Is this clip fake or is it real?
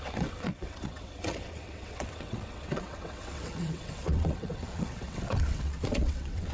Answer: fake